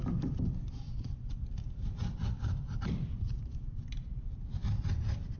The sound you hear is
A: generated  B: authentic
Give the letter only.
A